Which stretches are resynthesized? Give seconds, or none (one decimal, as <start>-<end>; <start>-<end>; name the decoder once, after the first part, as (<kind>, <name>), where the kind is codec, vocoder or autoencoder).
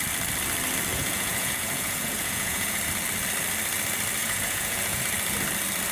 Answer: 0.9-2.8 (vocoder, Vocos); 4.2-5.0